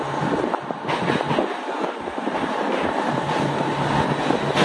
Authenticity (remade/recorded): recorded